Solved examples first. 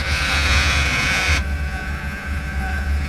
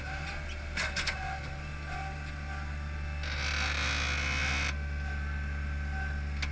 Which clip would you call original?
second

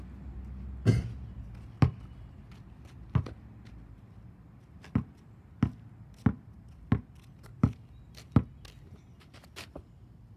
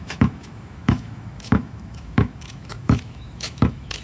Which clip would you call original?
first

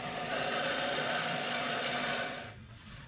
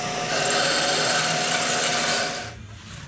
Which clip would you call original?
second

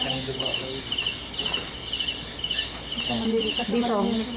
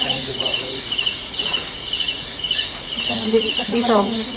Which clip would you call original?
first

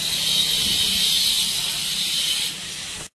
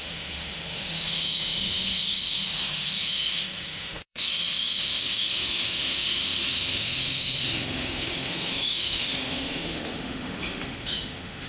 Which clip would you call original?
first